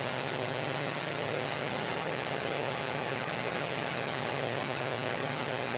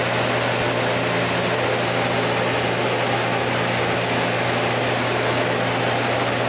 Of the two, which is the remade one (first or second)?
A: first